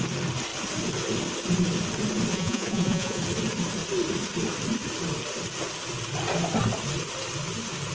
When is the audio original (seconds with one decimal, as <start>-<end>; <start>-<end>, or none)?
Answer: 0.0-2.3; 3.2-7.9